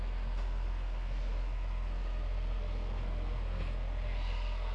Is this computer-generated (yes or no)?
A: yes